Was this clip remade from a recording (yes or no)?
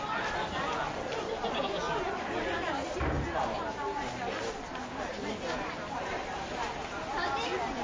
no